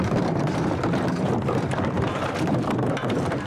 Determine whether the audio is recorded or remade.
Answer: remade